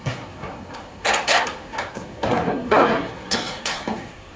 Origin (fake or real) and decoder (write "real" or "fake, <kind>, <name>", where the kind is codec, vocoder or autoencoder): fake, codec, SNAC